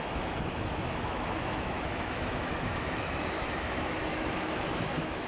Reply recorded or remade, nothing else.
remade